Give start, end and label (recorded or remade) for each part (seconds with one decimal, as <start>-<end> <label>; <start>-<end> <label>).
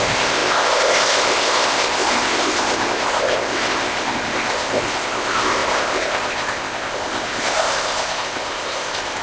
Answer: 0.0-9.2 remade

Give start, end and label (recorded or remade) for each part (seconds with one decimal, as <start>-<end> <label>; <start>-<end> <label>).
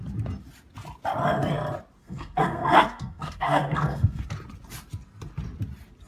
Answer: 0.0-2.0 recorded; 2.0-4.2 remade; 4.2-6.1 recorded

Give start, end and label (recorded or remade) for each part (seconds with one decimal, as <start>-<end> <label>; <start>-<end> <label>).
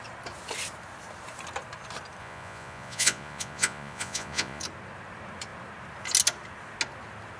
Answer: 0.0-2.2 recorded; 2.2-4.6 remade; 4.6-7.4 recorded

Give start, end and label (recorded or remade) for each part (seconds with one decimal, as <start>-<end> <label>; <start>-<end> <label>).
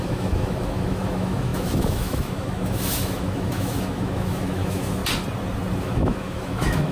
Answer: 0.0-5.0 remade; 5.0-5.8 recorded; 5.8-6.9 remade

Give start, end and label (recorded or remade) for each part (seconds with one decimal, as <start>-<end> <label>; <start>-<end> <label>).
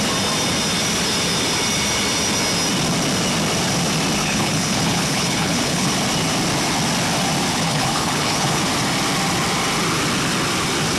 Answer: 0.0-4.2 recorded; 4.2-5.9 remade; 5.9-7.5 recorded; 7.5-8.6 remade; 8.6-11.0 recorded